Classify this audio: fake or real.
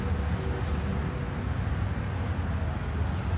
real